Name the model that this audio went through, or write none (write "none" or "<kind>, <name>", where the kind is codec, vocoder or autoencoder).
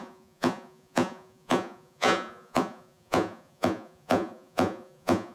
vocoder, Vocos